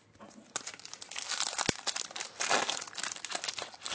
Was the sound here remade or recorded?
recorded